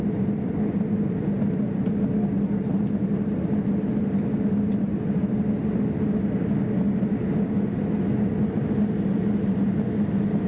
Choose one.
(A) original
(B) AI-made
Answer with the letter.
A